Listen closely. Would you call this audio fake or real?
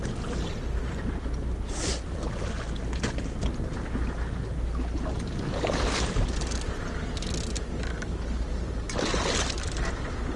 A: real